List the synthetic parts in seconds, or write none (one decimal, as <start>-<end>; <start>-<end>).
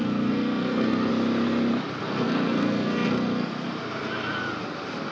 0.0-1.1; 2.0-3.5